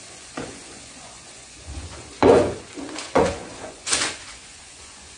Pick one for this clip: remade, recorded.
remade